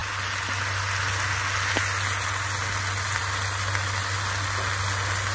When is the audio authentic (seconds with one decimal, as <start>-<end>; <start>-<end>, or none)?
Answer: 0.0-5.3